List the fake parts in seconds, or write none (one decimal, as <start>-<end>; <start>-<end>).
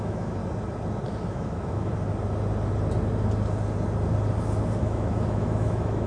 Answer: 0.0-0.4; 1.3-1.9; 4.8-6.1